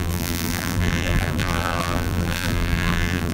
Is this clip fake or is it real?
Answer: fake